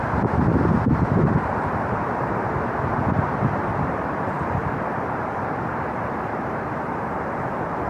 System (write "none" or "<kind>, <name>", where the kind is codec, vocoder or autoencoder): vocoder, BigVGAN v2